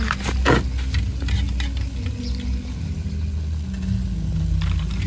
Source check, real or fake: real